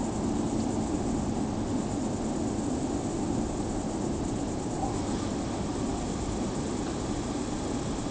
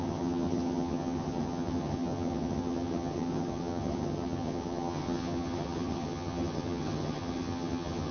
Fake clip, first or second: second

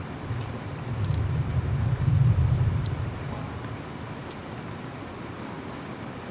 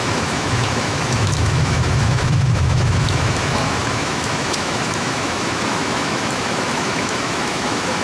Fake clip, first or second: second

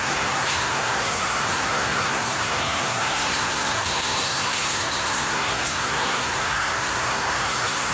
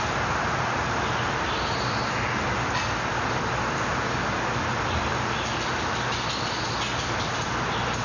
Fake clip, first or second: first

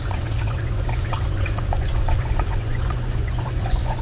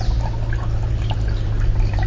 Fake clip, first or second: first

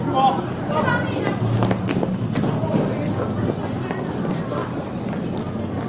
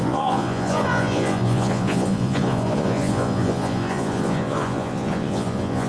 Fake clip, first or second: second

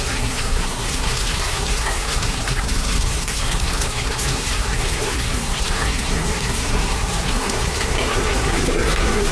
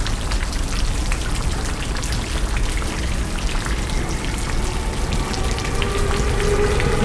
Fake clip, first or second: first